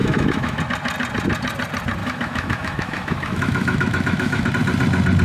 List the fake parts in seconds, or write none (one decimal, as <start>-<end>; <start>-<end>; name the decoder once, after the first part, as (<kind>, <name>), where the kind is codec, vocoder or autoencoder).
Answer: 0.0-0.6 (autoencoder, DAC-VAE); 2.0-4.5